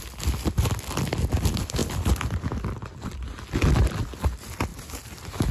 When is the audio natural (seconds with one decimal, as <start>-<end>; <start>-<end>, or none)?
0.0-1.8; 2.6-4.7